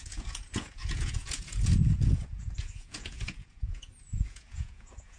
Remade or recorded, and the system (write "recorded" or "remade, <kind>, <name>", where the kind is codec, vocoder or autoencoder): remade, vocoder, Vocos